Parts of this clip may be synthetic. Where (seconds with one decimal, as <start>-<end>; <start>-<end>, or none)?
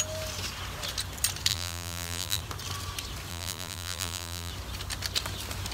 1.5-2.4; 3.3-4.5